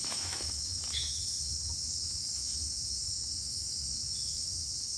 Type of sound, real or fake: fake